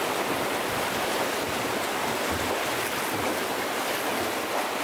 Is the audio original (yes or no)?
yes